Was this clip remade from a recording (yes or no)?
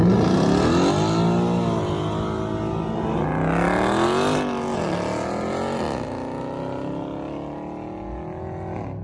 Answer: no